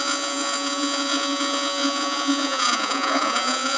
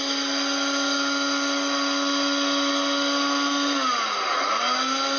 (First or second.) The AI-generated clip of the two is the first